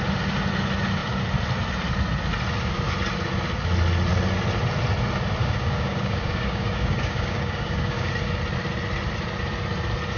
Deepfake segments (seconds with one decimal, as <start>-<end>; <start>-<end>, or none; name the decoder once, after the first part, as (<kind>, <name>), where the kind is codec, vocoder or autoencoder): 5.4-8.1 (codec, DAC)